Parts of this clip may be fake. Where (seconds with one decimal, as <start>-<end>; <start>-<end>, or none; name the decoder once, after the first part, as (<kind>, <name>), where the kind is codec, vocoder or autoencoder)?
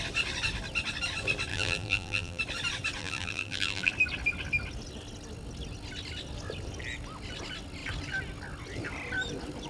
1.5-2.4 (vocoder, BigVGAN v2); 3.0-3.9